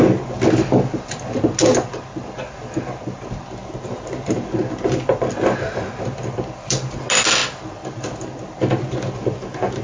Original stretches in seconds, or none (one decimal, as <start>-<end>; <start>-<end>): 0.0-9.8